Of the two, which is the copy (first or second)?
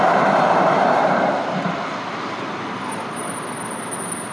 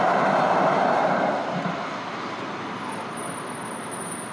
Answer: first